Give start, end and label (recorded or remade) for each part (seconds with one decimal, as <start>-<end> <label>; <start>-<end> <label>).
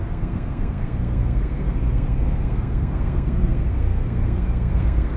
0.0-5.2 remade